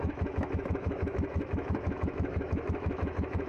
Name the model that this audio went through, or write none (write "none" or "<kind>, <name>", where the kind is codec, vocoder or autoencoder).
autoencoder, DAC-VAE